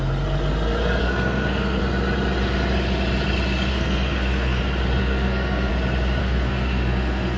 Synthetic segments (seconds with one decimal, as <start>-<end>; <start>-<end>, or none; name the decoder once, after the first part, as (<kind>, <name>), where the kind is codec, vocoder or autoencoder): 1.0-1.8 (codec, SNAC); 3.7-4.6; 5.0-5.7; 6.2-7.4